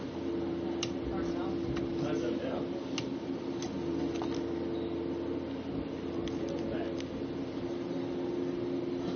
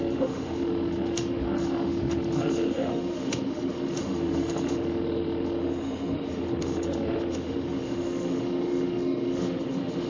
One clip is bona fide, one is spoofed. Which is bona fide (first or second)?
first